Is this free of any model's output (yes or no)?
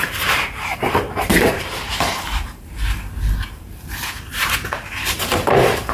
no